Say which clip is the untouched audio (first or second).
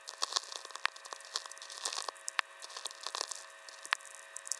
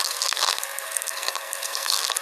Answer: first